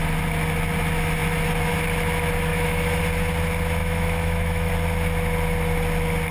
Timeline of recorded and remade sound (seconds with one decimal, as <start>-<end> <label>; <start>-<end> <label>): 0.0-2.5 recorded; 2.5-3.0 remade; 3.0-3.8 recorded; 3.8-4.7 remade; 4.7-6.3 recorded